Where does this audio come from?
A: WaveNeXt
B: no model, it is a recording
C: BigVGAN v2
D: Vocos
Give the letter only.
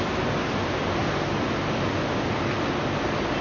B